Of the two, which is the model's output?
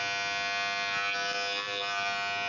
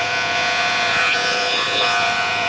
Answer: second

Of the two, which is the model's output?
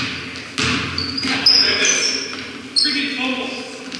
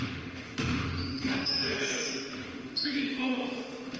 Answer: second